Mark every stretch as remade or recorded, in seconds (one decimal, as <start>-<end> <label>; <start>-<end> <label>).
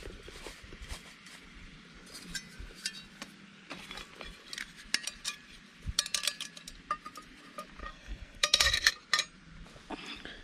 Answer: 0.0-7.8 recorded; 7.8-8.9 remade; 8.9-10.4 recorded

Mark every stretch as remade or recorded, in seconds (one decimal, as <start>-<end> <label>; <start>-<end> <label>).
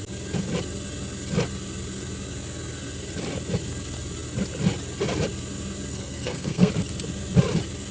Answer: 0.0-5.9 recorded; 5.9-6.7 remade; 6.7-7.9 recorded